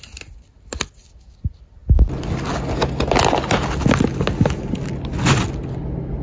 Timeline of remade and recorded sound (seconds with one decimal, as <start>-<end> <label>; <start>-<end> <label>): 0.0-6.2 recorded